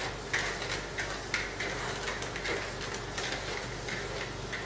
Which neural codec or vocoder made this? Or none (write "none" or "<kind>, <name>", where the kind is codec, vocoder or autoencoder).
none